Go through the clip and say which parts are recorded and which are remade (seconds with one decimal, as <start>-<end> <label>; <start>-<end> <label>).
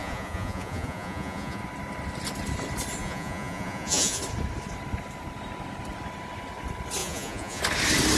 0.0-1.6 remade; 1.6-3.0 recorded; 3.0-4.2 remade; 4.2-7.0 recorded; 7.0-7.6 remade; 7.6-8.2 recorded